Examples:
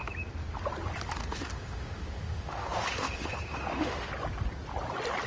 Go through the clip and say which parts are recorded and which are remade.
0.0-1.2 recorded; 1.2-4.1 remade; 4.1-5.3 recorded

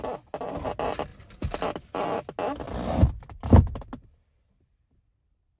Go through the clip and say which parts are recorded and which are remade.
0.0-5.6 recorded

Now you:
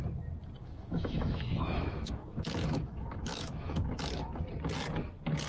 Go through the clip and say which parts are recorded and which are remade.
0.0-0.6 recorded; 0.6-3.9 remade; 3.9-5.5 recorded

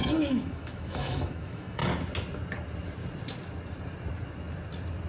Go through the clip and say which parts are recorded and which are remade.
0.0-1.8 remade; 1.8-5.1 recorded